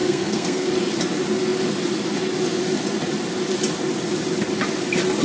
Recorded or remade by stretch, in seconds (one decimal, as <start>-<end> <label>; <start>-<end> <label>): 0.0-0.7 remade; 0.7-5.2 recorded